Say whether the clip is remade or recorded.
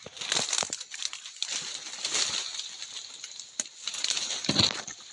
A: recorded